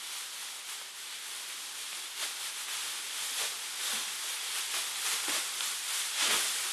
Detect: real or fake real